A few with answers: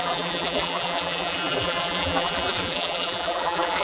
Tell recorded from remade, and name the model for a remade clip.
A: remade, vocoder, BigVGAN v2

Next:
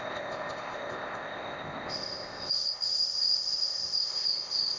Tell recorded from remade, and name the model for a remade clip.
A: remade, codec, ZipCodec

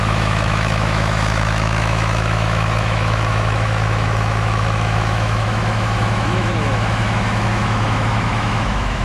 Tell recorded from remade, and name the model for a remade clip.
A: remade, autoencoder, DAC-VAE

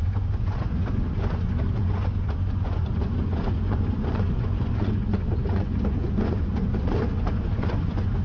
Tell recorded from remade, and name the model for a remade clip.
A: remade, vocoder, Vocos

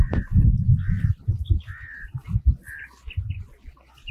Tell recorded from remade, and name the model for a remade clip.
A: recorded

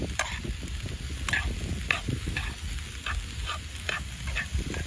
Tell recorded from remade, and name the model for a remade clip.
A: recorded